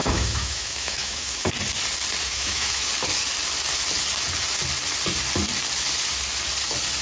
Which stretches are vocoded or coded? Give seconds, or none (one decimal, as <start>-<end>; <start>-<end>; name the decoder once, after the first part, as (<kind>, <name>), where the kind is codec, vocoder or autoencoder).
0.0-1.5 (autoencoder, DAC-VAE); 2.2-2.9